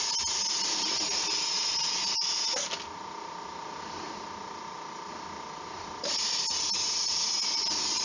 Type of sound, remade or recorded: recorded